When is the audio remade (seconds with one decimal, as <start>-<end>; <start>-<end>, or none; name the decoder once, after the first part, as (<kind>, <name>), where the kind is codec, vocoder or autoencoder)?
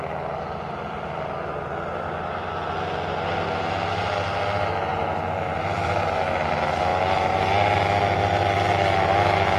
4.9-5.9 (vocoder, BigVGAN v2); 6.9-7.4